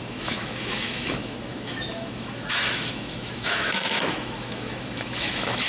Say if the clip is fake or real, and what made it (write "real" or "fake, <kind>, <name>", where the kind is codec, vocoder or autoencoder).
fake, autoencoder, DAC-VAE